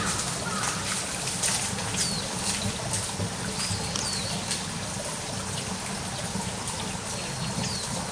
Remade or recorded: recorded